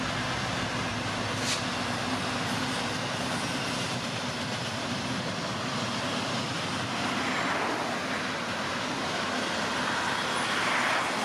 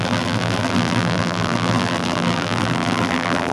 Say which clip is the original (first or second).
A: first